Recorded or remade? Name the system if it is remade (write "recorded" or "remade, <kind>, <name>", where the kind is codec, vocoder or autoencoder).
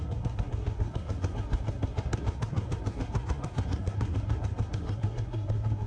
remade, codec, SNAC